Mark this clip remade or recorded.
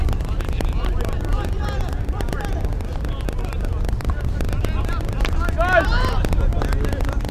recorded